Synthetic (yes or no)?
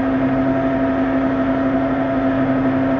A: no